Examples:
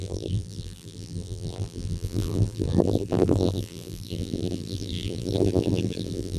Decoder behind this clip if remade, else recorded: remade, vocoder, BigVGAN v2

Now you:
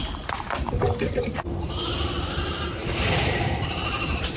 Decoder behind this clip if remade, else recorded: remade, vocoder, BigVGAN v2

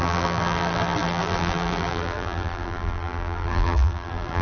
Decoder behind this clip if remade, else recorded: remade, vocoder, BigVGAN v2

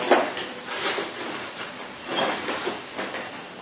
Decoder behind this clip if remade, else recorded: recorded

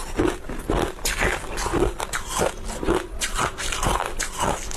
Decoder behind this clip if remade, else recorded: recorded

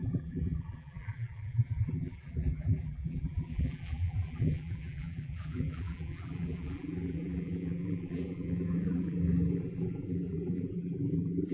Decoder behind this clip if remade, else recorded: remade, vocoder, BigVGAN v2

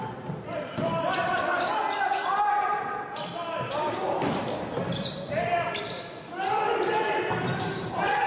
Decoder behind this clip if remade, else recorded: remade, vocoder, BigVGAN v2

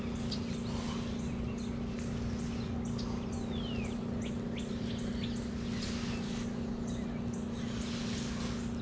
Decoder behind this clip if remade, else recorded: recorded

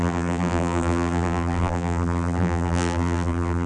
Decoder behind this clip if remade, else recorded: remade, vocoder, BigVGAN v2